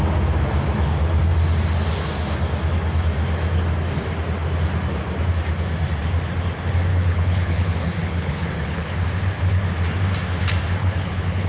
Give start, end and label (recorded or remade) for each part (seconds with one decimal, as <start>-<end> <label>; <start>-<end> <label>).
0.0-6.9 recorded; 6.9-8.9 remade; 8.9-10.8 recorded; 10.8-11.5 remade